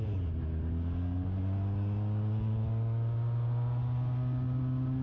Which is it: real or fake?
real